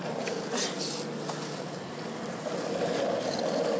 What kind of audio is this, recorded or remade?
recorded